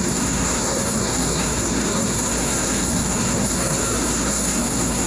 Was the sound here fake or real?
fake